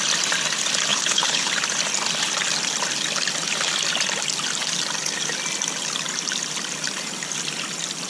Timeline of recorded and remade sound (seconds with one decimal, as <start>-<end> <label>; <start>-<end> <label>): 0.0-0.9 recorded; 0.9-1.5 remade; 1.5-8.1 recorded